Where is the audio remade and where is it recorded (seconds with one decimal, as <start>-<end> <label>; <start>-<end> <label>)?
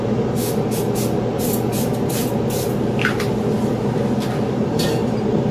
0.0-5.5 recorded